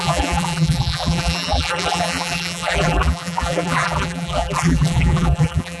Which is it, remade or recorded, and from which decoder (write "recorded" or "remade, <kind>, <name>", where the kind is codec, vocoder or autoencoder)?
remade, vocoder, BigVGAN v2